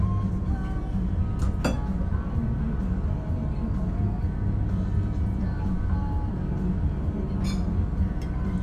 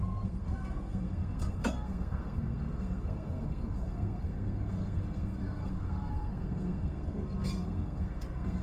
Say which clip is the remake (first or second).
second